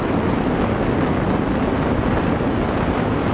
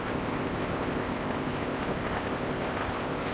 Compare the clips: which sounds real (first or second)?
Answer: first